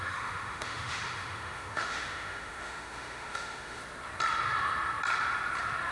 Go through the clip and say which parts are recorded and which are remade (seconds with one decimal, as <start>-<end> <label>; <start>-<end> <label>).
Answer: 0.0-3.8 remade; 3.8-5.9 recorded